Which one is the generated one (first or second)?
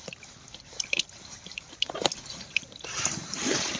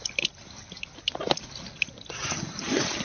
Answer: first